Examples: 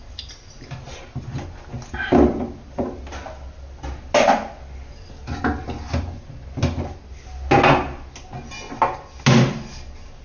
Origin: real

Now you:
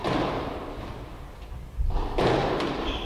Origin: real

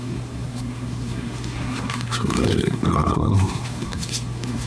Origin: fake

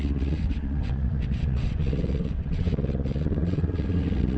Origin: fake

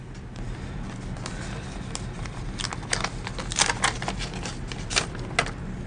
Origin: real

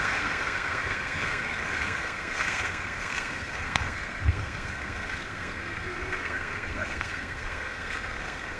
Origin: fake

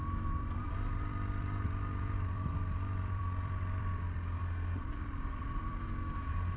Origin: fake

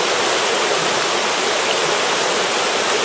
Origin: real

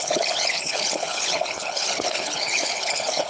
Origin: fake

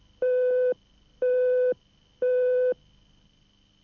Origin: real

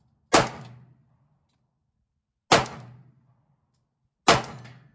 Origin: real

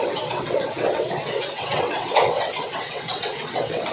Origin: fake